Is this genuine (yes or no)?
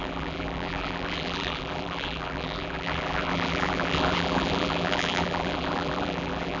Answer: no